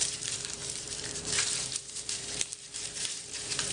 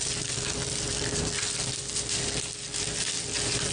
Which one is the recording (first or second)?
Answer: second